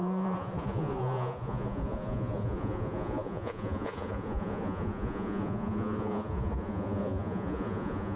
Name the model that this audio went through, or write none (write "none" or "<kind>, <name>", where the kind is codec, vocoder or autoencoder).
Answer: vocoder, Vocos